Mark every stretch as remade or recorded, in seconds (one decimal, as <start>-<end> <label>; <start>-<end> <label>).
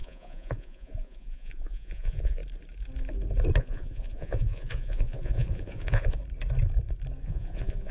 0.0-2.4 remade; 2.4-3.6 recorded; 3.6-6.2 remade; 6.2-7.2 recorded; 7.2-7.9 remade